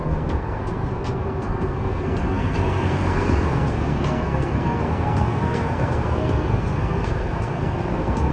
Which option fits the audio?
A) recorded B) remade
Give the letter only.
B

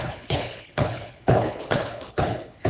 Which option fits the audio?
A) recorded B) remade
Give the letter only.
B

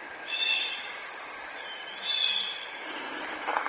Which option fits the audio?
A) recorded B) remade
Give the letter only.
A